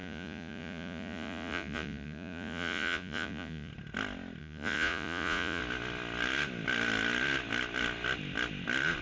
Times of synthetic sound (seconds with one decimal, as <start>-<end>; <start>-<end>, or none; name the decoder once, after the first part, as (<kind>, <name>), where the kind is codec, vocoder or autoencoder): 0.0-3.7 (vocoder, Vocos); 4.4-5.6